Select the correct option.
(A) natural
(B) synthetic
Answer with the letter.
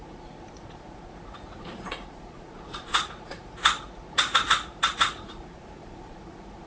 B